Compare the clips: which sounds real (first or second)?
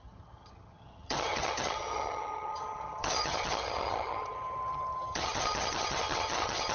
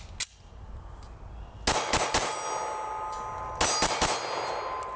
second